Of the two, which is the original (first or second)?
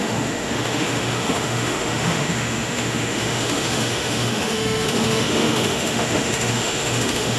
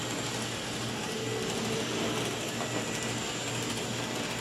second